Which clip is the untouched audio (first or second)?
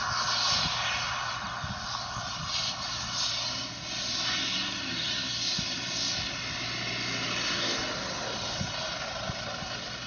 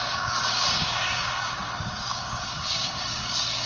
first